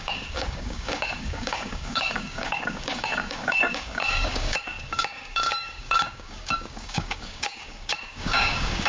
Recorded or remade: remade